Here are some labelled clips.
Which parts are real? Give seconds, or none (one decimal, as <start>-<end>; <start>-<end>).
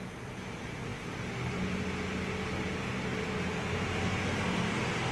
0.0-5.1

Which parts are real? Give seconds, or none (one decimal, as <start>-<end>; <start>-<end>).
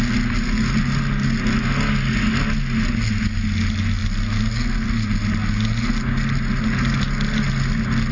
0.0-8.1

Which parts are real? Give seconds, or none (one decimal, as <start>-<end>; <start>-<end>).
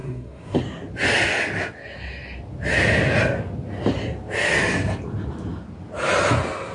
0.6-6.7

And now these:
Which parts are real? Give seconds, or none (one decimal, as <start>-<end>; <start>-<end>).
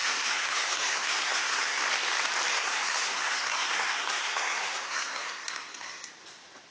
1.8-2.5; 6.1-6.7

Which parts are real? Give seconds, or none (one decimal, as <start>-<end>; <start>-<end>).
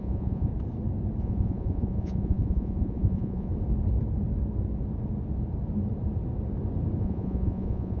0.5-1.2; 3.5-7.0